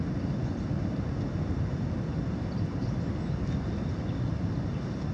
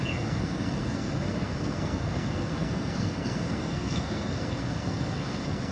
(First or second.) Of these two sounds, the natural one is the first